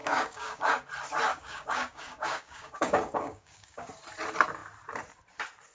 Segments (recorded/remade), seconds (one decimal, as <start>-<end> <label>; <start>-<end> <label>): 0.0-0.7 remade; 0.7-1.3 recorded; 1.3-3.9 remade; 3.9-5.7 recorded